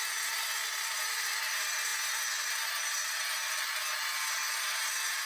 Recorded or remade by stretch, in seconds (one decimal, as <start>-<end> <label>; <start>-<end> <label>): 0.0-5.3 recorded

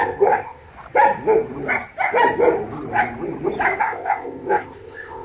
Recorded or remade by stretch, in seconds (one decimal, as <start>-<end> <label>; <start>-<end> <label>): 0.0-0.7 remade; 0.7-3.8 recorded; 3.8-5.2 remade

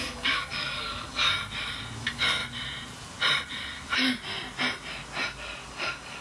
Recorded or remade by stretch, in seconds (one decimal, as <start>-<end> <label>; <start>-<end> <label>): 0.0-1.4 remade; 1.4-2.0 recorded; 2.0-2.4 remade; 2.4-5.7 recorded; 5.7-6.2 remade

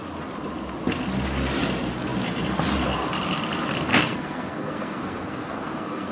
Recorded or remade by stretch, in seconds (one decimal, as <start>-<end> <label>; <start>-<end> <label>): 0.0-3.9 recorded; 3.9-6.1 remade

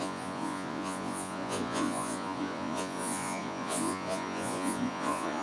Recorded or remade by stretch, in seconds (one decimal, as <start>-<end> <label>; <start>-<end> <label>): 0.0-5.4 remade